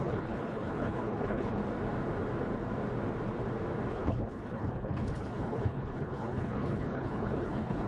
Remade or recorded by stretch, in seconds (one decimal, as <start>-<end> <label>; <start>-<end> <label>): 0.0-1.6 remade; 1.6-3.9 recorded; 3.9-7.9 remade